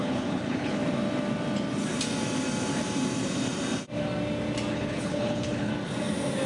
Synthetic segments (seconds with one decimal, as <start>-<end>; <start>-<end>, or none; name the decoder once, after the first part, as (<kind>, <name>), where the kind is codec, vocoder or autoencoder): 0.0-0.8 (codec, HILCodec); 4.7-5.7